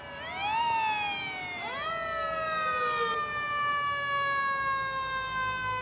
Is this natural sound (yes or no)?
yes